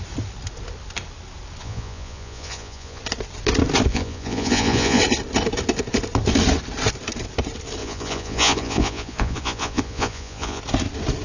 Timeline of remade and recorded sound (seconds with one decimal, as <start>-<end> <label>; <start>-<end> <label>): 0.0-1.6 recorded; 1.6-3.0 remade; 3.0-3.9 recorded; 3.9-5.0 remade; 5.0-7.8 recorded; 7.8-10.6 remade; 10.6-11.2 recorded